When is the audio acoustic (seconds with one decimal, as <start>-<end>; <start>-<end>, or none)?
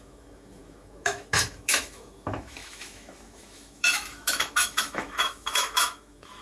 none